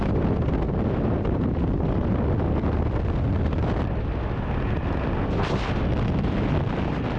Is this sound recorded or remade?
recorded